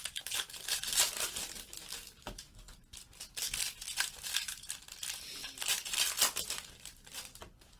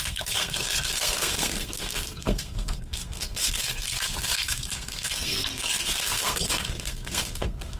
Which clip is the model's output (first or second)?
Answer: second